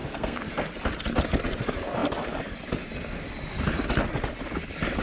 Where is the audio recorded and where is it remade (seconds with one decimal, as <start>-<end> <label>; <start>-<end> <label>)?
0.0-0.5 remade; 0.5-5.0 recorded